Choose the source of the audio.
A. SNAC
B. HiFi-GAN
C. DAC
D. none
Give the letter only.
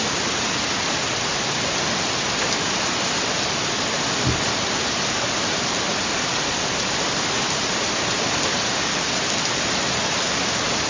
D